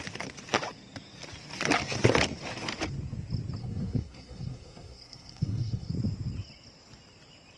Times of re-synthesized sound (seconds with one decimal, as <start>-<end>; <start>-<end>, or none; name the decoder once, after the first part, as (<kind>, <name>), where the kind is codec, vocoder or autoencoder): 3.6-5.9 (codec, SNAC)